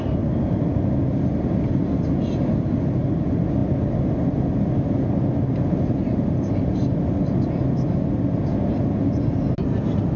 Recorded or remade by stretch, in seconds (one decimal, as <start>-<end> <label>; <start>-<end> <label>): 0.0-10.2 recorded